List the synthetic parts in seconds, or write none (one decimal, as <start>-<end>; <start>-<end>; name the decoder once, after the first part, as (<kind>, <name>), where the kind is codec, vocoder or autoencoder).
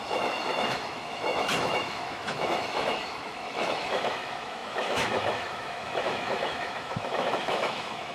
0.0-8.1 (autoencoder, DAC-VAE)